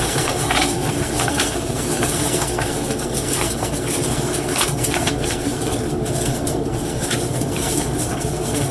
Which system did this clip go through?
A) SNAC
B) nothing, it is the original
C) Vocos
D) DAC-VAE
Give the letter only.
A